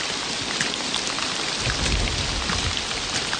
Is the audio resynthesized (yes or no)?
no